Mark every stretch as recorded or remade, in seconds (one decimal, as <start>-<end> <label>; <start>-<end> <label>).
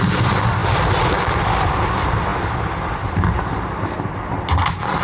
0.0-5.0 recorded